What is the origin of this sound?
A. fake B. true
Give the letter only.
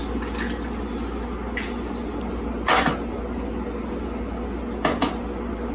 B